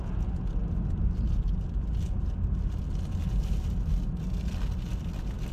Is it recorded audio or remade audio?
recorded